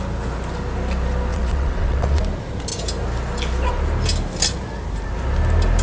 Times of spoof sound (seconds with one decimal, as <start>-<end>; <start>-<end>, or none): 1.3-2.2